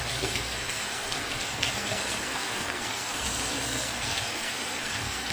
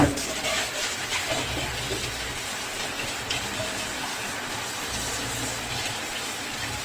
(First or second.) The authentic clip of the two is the second